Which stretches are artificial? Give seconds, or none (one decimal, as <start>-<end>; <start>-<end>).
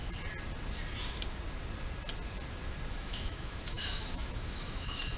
2.9-5.2